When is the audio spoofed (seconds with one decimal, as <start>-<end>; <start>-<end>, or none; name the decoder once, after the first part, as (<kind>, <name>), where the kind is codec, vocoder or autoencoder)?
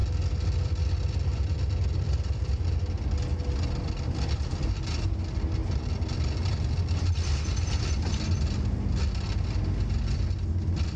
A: 1.3-2.2 (vocoder, BigVGAN v2); 3.3-3.9; 7.5-8.1